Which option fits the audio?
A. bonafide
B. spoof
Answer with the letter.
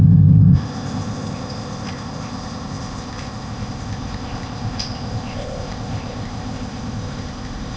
B